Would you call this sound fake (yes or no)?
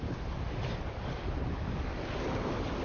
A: no